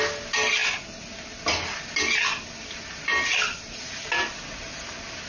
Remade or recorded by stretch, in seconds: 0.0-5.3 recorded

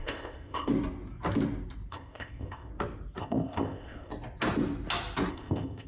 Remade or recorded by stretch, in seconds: 0.0-0.7 remade; 0.7-1.9 recorded; 1.9-2.7 remade; 2.7-3.2 recorded; 3.2-4.1 remade; 4.1-5.3 recorded; 5.3-5.9 remade

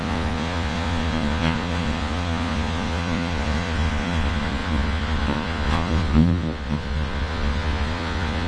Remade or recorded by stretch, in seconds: 0.0-8.5 remade

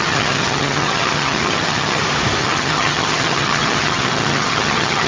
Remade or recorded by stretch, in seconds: 0.0-2.0 remade; 2.0-2.4 recorded; 2.4-5.1 remade

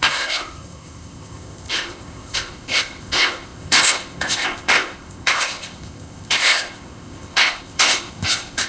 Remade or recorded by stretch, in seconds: 0.0-8.7 remade

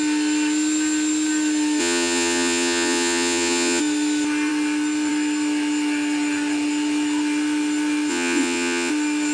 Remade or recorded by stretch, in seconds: 0.0-1.8 recorded; 1.8-3.8 remade; 3.8-8.1 recorded; 8.1-8.9 remade; 8.9-9.3 recorded

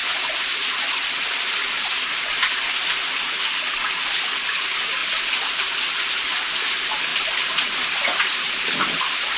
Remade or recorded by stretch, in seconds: 0.0-2.8 remade; 2.8-5.0 recorded; 5.0-6.1 remade; 6.1-7.1 recorded; 7.1-9.4 remade